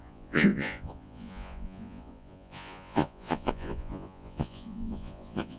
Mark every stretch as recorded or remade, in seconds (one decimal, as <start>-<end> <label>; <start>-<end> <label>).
0.0-5.6 remade